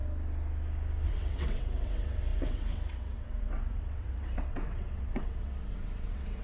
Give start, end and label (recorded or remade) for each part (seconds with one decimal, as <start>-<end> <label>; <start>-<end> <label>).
0.0-1.1 recorded; 1.1-6.4 remade

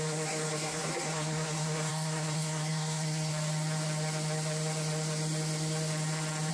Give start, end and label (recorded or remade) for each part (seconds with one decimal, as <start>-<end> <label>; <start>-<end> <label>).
0.0-3.3 remade; 3.3-6.5 recorded

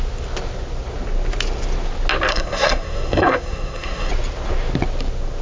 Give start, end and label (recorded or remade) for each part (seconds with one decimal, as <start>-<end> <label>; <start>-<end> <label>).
0.0-2.3 recorded; 2.3-4.1 remade; 4.1-5.4 recorded

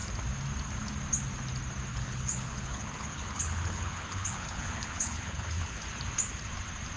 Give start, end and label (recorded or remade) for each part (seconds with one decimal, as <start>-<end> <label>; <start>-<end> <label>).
0.0-1.9 recorded; 1.9-5.8 remade; 5.8-7.0 recorded

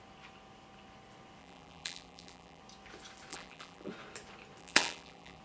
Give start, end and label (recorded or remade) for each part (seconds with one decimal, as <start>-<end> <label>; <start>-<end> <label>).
0.0-1.4 recorded; 1.4-2.6 remade; 2.6-3.3 recorded; 3.3-3.9 remade; 3.9-4.6 recorded; 4.6-5.4 remade

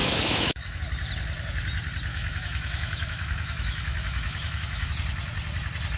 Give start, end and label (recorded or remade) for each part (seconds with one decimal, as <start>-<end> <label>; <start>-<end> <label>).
0.0-0.8 remade; 0.8-2.1 recorded; 2.1-4.9 remade; 4.9-6.0 recorded